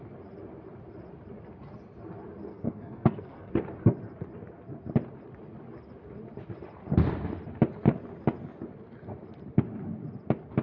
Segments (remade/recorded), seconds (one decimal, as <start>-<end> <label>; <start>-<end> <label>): 0.0-2.5 recorded; 2.5-3.5 remade; 3.5-10.6 recorded